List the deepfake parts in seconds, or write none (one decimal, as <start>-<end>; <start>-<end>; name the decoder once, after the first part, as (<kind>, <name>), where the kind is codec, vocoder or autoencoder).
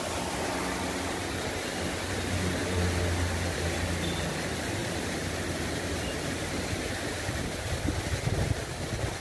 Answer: 4.8-7.7 (vocoder, BigVGAN v2)